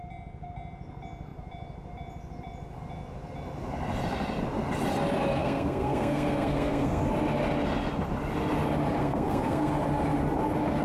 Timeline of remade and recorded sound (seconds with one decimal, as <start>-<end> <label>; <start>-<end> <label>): 0.0-5.4 recorded; 5.4-7.0 remade; 7.0-9.0 recorded; 9.0-9.7 remade; 9.7-10.8 recorded